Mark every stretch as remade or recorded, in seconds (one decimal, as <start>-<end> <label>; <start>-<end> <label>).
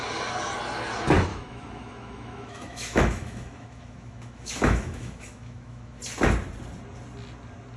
0.0-1.3 recorded; 1.3-6.0 remade; 6.0-7.8 recorded